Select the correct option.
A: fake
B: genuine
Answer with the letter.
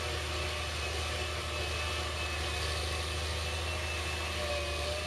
B